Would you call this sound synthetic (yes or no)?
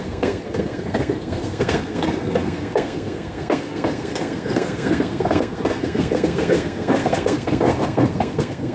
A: yes